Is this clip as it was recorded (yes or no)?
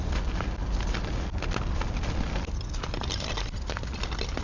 yes